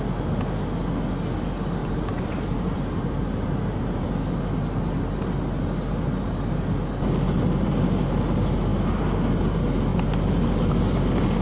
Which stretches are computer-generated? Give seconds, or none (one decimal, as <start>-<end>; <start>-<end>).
1.8-4.0